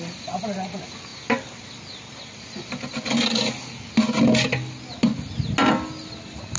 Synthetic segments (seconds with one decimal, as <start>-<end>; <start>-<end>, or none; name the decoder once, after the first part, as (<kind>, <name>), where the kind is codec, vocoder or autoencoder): none